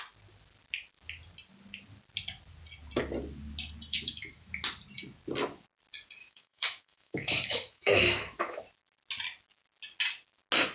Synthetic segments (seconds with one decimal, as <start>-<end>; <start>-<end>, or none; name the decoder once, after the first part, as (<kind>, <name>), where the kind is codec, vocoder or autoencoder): 3.9-4.5 (autoencoder, DAC-VAE); 6.2-8.6